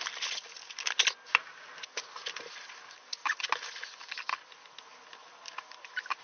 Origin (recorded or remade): recorded